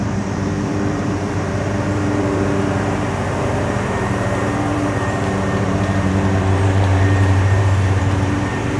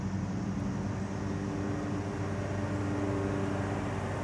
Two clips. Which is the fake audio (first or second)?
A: first